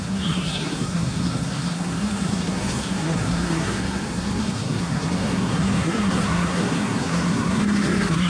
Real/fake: fake